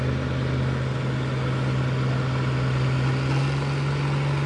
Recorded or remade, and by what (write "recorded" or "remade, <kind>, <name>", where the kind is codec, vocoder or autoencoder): recorded